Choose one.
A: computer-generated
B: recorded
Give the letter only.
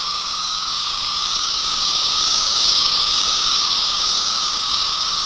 A